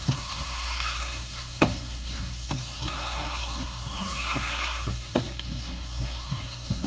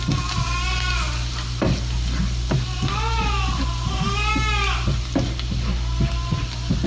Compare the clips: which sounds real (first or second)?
second